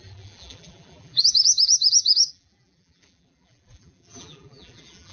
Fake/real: fake